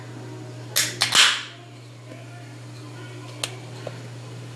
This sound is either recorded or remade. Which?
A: recorded